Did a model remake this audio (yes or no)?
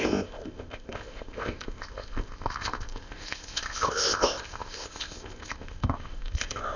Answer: yes